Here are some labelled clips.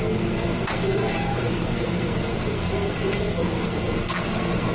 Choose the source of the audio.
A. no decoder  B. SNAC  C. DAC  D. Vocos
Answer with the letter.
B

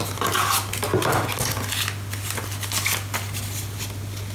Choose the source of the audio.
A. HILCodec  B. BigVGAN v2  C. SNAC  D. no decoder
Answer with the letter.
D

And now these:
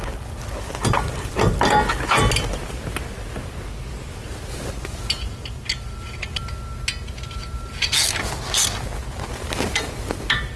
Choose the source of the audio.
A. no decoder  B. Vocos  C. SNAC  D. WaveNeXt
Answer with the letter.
A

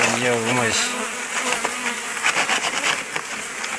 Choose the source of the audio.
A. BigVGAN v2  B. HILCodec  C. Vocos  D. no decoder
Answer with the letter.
D